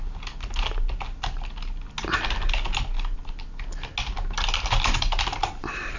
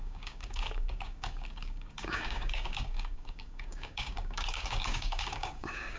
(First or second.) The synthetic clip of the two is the second